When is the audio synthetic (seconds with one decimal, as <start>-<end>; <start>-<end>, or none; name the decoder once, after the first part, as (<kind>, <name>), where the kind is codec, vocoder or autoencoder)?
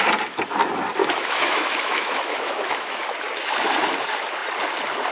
1.0-3.0 (autoencoder, DAC-VAE)